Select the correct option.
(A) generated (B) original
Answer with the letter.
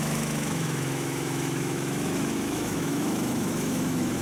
A